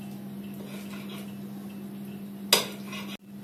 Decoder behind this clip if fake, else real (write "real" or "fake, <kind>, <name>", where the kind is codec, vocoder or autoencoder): real